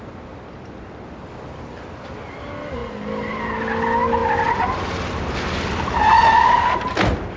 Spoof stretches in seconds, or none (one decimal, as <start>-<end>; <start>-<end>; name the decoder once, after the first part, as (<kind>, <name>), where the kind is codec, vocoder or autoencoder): none